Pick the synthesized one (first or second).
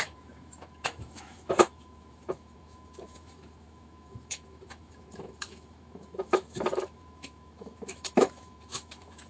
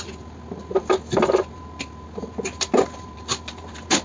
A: first